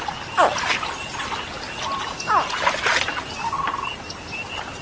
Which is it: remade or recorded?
recorded